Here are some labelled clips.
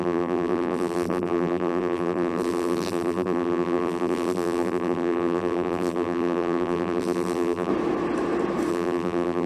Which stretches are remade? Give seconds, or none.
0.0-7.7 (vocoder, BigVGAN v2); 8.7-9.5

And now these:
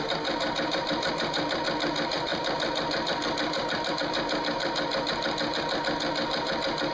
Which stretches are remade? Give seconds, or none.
2.3-3.9 (vocoder, BigVGAN v2)

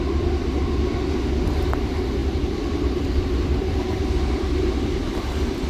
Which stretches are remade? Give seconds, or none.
2.2-4.7 (vocoder, BigVGAN v2)